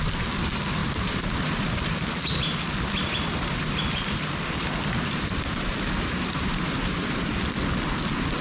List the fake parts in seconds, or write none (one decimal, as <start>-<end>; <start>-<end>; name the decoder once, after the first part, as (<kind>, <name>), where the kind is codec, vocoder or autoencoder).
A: 0.8-1.8 (vocoder, BigVGAN v2); 3.0-7.5